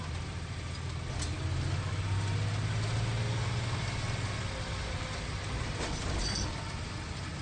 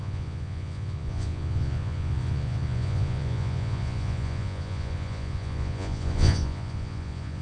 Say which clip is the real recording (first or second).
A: first